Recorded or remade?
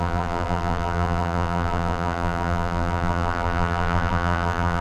remade